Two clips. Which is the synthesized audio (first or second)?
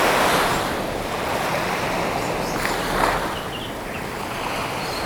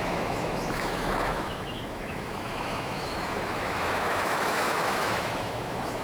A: second